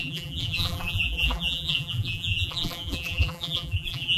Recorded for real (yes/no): no